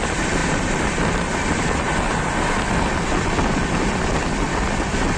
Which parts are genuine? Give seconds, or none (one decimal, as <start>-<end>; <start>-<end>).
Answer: 0.0-5.2